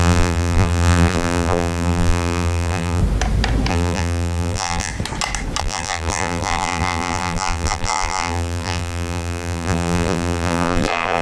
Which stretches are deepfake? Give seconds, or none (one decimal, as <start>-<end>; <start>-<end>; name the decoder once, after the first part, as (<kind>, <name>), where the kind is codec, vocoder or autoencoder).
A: 0.0-3.0 (vocoder, BigVGAN v2); 3.7-4.9; 5.6-11.2